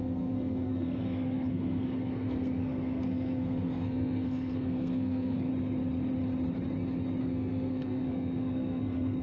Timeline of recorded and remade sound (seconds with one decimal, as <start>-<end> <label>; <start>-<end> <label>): 0.0-5.5 remade; 5.5-7.2 recorded; 7.2-9.2 remade